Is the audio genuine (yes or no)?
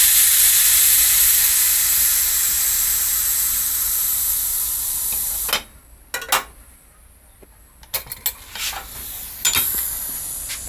yes